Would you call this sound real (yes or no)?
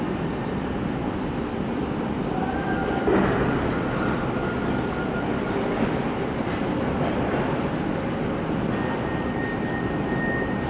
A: yes